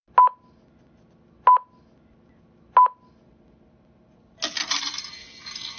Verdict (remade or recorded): recorded